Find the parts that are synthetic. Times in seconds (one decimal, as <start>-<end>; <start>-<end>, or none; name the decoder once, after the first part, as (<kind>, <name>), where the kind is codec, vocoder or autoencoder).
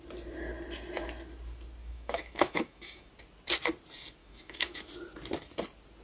1.8-3.1 (autoencoder, DAC-VAE); 4.2-4.9